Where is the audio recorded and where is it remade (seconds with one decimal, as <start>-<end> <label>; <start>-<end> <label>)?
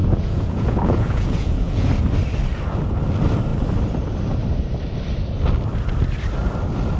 0.0-1.9 remade; 1.9-7.0 recorded